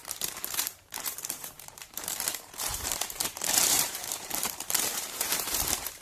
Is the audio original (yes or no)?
no